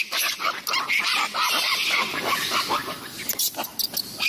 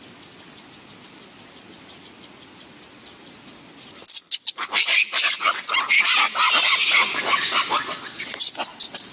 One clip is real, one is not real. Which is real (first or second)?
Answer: second